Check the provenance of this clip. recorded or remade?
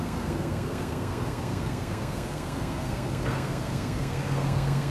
remade